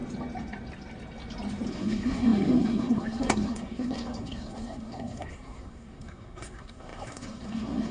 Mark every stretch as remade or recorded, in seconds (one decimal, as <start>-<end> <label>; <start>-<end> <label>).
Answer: 0.0-1.7 recorded; 1.7-7.9 remade